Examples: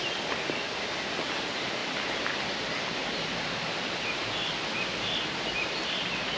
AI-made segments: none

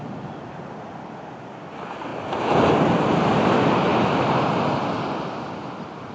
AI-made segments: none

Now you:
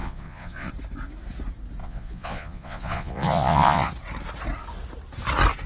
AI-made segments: 0.0-0.7 (vocoder, Vocos); 1.8-3.9

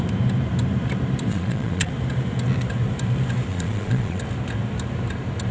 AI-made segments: 1.3-1.9 (vocoder, Vocos); 3.5-4.2

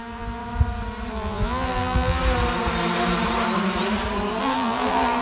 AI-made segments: 0.0-0.4 (vocoder, BigVGAN v2); 1.1-2.2; 4.4-5.2

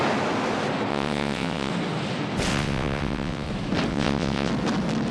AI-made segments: 0.9-1.7 (vocoder, WaveNeXt); 2.5-3.5; 3.9-4.5

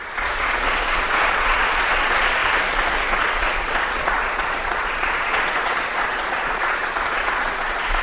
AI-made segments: 0.0-2.4 (vocoder, Vocos); 3.2-8.0